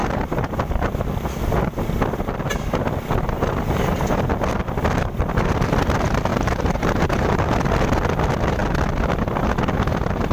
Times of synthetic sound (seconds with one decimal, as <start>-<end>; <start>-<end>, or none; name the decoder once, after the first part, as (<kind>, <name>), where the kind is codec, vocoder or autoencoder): 0.0-1.4 (vocoder, BigVGAN v2); 6.3-7.5